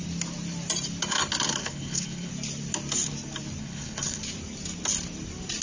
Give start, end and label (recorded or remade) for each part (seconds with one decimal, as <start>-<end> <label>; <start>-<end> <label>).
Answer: 0.0-1.6 recorded; 1.6-2.3 remade; 2.3-3.6 recorded; 3.6-4.2 remade; 4.2-5.6 recorded